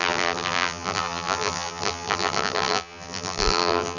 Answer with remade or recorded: remade